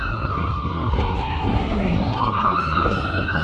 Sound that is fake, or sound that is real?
fake